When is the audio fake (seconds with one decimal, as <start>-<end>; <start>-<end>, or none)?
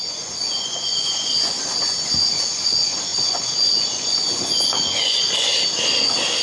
0.0-5.5